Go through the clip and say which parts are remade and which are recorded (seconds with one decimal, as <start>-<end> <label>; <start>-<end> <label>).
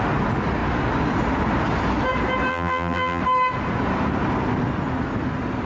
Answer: 0.0-2.5 recorded; 2.5-3.2 remade; 3.2-5.7 recorded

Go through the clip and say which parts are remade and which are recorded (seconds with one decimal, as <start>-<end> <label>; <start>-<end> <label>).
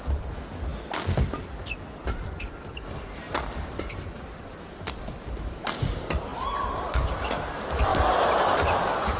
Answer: 0.0-2.7 recorded; 2.7-5.7 remade; 5.7-7.9 recorded; 7.9-9.2 remade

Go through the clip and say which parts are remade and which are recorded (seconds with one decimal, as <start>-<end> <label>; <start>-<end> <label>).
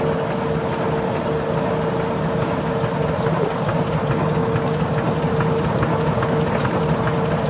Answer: 0.0-7.5 recorded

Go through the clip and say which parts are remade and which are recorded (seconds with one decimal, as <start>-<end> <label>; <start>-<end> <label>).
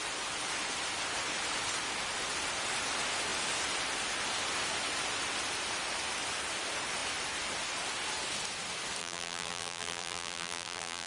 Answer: 0.0-9.0 recorded; 9.0-11.1 remade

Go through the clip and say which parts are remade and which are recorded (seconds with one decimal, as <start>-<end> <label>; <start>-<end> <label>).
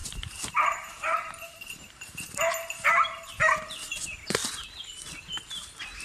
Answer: 0.0-3.6 remade; 3.6-4.4 recorded; 4.4-5.1 remade; 5.1-6.0 recorded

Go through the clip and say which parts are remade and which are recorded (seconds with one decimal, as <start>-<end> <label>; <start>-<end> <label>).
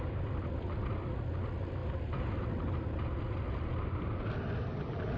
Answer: 0.0-5.2 recorded